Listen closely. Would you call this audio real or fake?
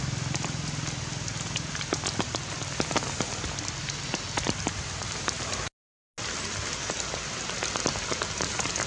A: real